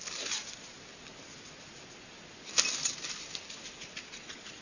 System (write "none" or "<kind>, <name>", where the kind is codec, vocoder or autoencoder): none